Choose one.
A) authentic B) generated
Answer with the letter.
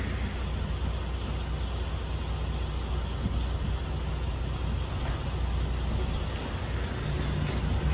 A